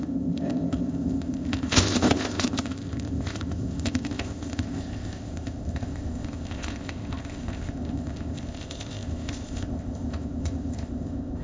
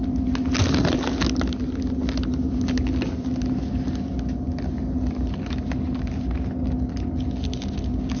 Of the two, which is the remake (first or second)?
first